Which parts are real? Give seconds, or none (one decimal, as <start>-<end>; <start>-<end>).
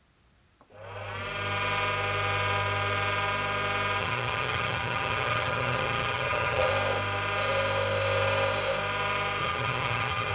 0.0-4.0; 6.7-9.4